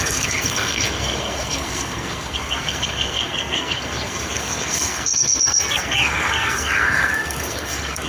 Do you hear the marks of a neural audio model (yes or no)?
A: yes